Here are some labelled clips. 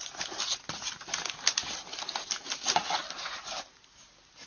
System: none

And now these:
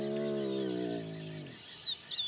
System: none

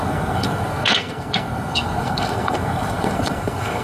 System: codec, SNAC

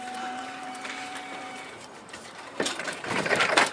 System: vocoder, BigVGAN v2